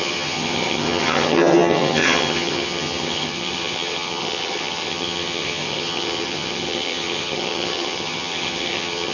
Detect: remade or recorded remade